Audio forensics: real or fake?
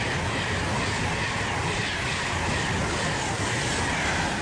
real